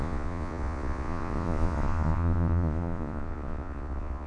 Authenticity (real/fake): fake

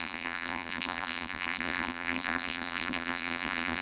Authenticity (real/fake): fake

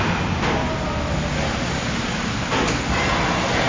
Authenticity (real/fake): real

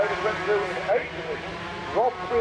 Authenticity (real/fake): real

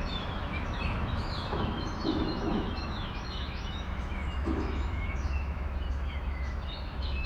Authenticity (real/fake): fake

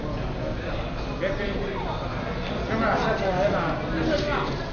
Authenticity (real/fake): real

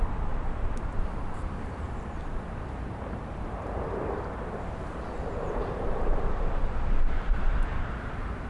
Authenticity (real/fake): fake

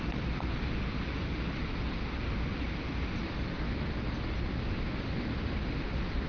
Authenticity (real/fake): real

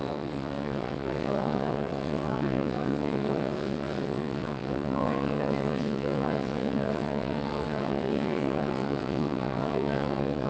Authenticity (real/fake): fake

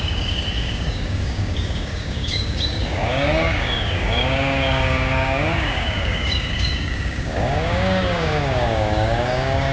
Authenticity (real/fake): fake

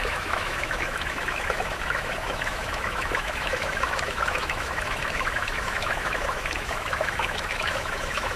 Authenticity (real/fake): fake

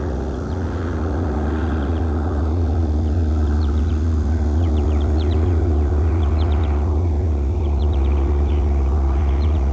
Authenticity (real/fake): fake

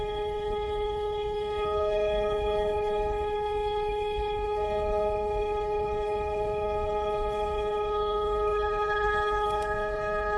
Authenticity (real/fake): fake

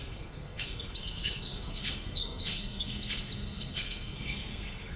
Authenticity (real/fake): fake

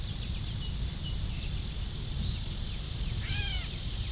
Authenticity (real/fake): real